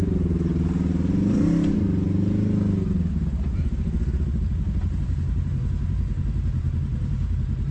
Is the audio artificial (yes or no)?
no